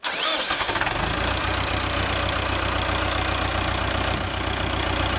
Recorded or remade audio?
recorded